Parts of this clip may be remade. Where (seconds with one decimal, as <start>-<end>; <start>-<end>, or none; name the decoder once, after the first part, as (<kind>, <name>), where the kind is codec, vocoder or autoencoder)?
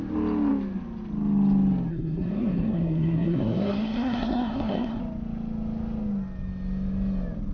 1.9-5.0 (codec, SNAC)